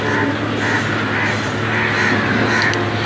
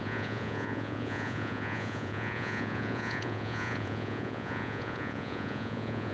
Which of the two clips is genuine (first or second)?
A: first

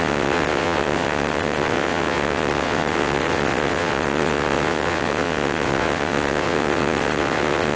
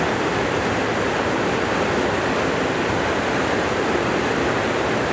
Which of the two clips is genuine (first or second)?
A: second